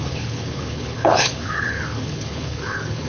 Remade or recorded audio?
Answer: remade